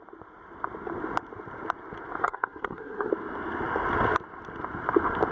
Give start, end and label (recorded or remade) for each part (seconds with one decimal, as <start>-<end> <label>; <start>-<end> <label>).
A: 0.0-2.2 recorded; 2.2-3.1 remade; 3.1-5.3 recorded